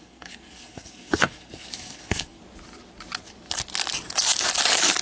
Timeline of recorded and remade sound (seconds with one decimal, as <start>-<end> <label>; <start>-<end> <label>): 0.0-2.4 remade; 2.4-5.0 recorded